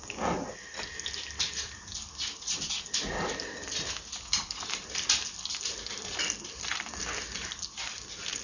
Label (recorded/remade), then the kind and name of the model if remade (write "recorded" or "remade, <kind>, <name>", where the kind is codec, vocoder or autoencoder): recorded